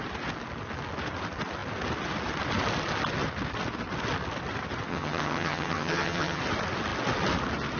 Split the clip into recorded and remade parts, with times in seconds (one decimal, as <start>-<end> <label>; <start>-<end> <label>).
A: 0.0-4.9 recorded; 4.9-6.4 remade; 6.4-7.8 recorded